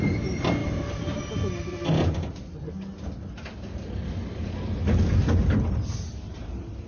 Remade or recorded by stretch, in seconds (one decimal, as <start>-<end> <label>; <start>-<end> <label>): 0.0-6.9 recorded